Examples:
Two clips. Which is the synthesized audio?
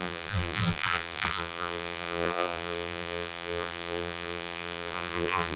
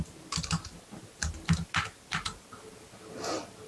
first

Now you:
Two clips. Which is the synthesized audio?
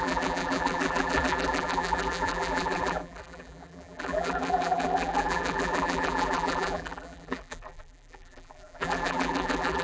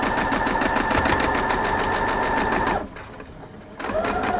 first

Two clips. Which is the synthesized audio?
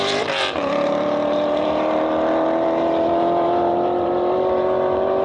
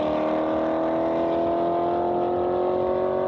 first